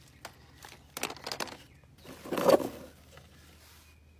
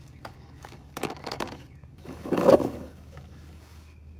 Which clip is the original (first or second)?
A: first